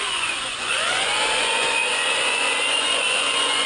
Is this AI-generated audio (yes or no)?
yes